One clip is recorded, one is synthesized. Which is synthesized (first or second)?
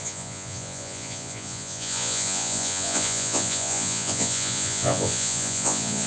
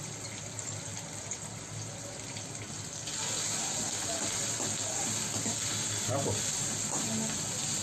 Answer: first